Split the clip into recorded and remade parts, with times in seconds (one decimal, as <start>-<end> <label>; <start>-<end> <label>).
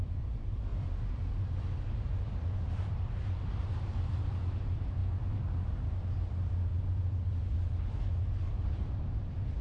0.0-0.7 remade; 0.7-2.7 recorded; 2.7-5.0 remade; 5.0-5.6 recorded; 5.6-9.6 remade